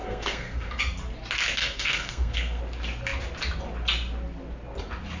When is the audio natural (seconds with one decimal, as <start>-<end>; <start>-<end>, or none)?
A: 0.8-1.6; 2.6-5.2